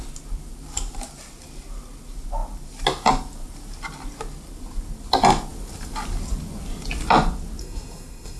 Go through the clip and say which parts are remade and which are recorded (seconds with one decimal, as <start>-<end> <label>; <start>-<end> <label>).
0.0-7.6 recorded; 7.6-8.4 remade